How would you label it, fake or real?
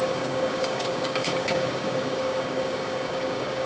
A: fake